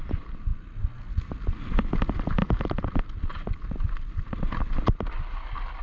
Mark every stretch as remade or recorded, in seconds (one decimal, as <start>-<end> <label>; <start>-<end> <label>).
0.0-2.4 recorded; 2.4-2.9 remade; 2.9-5.8 recorded

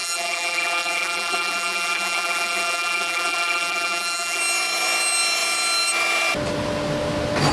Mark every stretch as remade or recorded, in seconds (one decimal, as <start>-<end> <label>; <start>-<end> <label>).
0.0-4.4 remade; 4.4-7.5 recorded

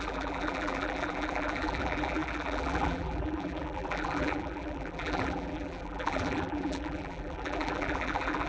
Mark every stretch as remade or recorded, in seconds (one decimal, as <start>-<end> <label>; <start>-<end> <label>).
0.0-8.5 remade

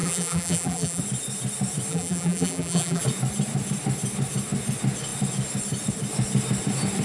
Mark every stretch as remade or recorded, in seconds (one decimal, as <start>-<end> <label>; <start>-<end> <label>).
0.0-1.0 remade; 1.0-1.9 recorded; 1.9-3.0 remade; 3.0-7.0 recorded

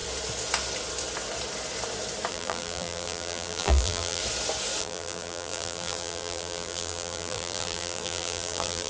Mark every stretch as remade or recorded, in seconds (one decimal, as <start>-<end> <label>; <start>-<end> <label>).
0.0-2.3 recorded; 2.3-4.2 remade; 4.2-4.8 recorded; 4.8-8.9 remade

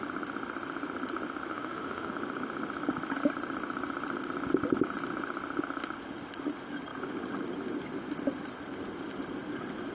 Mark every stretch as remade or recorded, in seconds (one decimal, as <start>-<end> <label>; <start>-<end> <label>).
0.0-1.5 recorded; 1.5-2.1 remade; 2.1-9.9 recorded

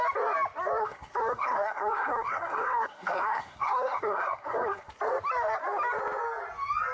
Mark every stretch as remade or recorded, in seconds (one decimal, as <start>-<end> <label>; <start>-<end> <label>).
0.0-0.8 recorded; 0.8-4.9 remade; 4.9-6.9 recorded